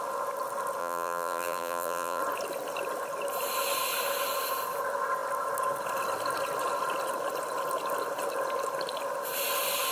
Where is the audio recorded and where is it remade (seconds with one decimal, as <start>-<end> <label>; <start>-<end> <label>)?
0.0-0.8 recorded; 0.8-2.2 remade; 2.2-9.9 recorded